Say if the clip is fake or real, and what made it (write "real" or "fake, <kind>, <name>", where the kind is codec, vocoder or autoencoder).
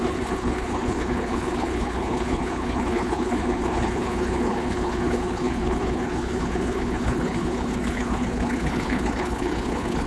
fake, codec, HILCodec